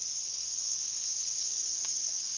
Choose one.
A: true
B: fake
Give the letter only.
B